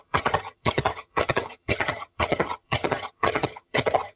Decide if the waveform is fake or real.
fake